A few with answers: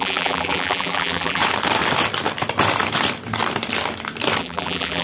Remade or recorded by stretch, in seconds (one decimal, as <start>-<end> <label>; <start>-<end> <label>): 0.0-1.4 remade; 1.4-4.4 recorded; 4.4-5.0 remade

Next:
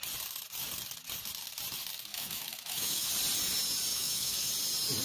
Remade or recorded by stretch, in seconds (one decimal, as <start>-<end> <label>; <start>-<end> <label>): 0.0-2.1 recorded; 2.1-3.1 remade; 3.1-3.9 recorded; 3.9-4.5 remade; 4.5-5.0 recorded

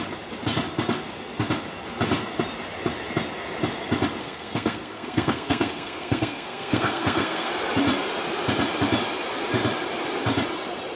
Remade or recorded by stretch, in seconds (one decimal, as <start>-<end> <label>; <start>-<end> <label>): 0.0-4.2 recorded; 4.2-7.5 remade; 7.5-11.0 recorded

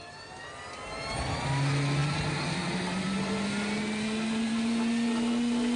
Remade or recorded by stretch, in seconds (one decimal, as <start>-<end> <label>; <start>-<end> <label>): 0.0-5.8 recorded

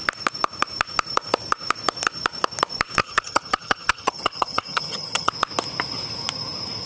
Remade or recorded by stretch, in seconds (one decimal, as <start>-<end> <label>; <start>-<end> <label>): 0.0-3.0 recorded; 3.0-5.3 remade; 5.3-6.9 recorded

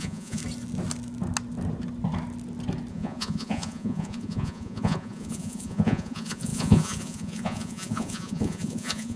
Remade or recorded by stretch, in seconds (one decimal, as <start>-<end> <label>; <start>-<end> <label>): 0.0-0.4 remade; 0.4-2.9 recorded; 2.9-9.2 remade

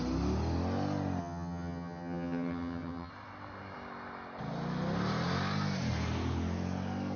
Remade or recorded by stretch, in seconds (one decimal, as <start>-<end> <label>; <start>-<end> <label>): 0.0-1.2 recorded; 1.2-3.1 remade; 3.1-7.2 recorded

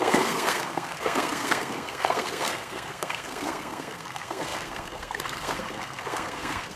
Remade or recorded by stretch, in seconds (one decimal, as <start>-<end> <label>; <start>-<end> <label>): 0.0-6.8 remade